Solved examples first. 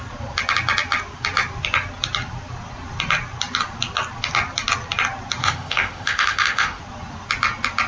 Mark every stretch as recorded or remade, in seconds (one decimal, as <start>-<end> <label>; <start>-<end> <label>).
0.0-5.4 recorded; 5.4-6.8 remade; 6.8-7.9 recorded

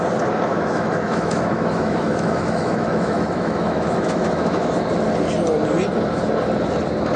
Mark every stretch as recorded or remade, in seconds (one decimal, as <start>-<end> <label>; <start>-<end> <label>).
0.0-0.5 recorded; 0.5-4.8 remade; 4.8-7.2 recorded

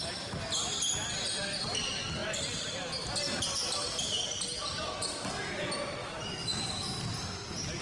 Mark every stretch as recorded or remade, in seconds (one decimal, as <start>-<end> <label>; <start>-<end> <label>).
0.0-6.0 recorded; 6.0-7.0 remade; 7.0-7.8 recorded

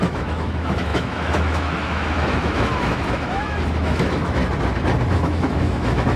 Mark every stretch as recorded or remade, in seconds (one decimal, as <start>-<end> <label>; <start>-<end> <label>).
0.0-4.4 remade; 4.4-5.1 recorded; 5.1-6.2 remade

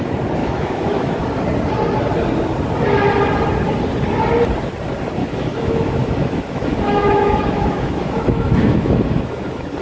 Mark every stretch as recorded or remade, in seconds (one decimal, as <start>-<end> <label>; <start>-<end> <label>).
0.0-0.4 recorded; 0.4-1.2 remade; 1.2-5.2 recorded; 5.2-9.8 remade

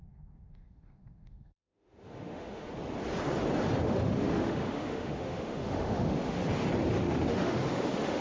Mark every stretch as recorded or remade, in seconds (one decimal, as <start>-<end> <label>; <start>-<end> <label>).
0.0-2.7 remade; 2.7-3.8 recorded; 3.8-6.4 remade; 6.4-7.0 recorded; 7.0-8.2 remade

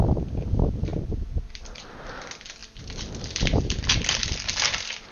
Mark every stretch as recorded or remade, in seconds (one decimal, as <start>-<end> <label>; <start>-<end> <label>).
0.0-5.1 recorded